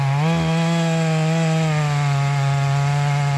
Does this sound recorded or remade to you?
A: recorded